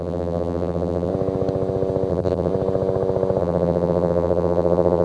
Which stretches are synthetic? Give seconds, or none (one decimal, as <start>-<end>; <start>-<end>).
0.0-1.1; 2.1-2.5; 3.4-5.0